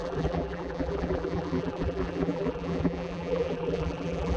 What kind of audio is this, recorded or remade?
remade